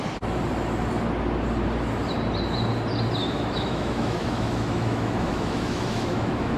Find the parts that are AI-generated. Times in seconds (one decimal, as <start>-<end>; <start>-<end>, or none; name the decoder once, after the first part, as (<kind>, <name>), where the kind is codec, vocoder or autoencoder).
3.2-6.6 (autoencoder, DAC-VAE)